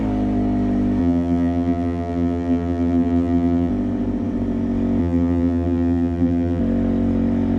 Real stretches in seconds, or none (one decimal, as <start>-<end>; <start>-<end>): 0.0-1.0; 3.7-5.0; 6.6-7.6